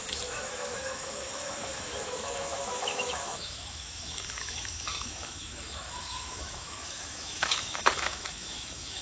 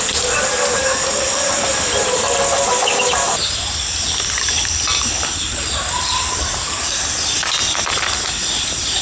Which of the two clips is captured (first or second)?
second